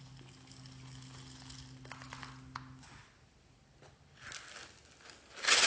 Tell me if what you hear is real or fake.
real